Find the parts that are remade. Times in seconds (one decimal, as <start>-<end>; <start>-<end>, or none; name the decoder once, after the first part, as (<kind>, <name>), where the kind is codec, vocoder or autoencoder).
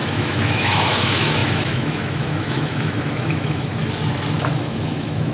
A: 0.0-3.8 (autoencoder, DAC-VAE); 4.4-5.3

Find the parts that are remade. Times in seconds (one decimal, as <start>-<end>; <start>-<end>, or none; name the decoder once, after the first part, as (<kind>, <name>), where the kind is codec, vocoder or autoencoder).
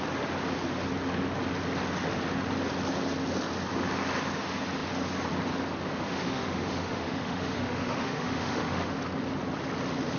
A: 5.9-9.0 (autoencoder, DAC-VAE)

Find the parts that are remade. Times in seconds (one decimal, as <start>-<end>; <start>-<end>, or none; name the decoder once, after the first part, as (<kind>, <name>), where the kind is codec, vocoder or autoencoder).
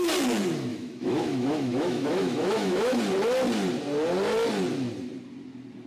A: 0.7-3.0 (autoencoder, DAC-VAE)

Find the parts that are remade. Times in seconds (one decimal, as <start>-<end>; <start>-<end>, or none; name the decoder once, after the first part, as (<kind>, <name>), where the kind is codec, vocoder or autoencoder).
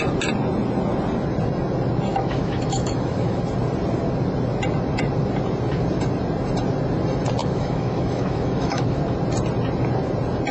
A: 2.1-3.4 (autoencoder, DAC-VAE); 7.4-9.0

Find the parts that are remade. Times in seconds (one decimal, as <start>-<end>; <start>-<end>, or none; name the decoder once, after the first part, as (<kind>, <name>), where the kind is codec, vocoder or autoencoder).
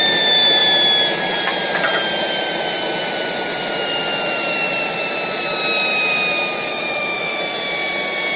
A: 6.7-7.4 (autoencoder, DAC-VAE)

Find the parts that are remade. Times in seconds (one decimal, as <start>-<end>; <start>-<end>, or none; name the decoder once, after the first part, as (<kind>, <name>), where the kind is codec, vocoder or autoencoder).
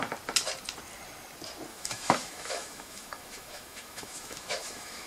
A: 1.7-5.1 (autoencoder, DAC-VAE)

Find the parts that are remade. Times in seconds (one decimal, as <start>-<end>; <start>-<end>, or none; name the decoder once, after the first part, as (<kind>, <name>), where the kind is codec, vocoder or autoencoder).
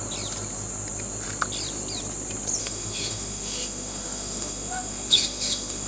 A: 2.6-5.9 (autoencoder, DAC-VAE)